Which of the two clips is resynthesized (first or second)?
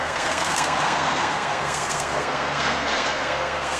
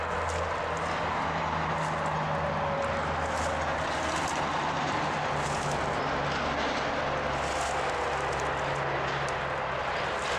first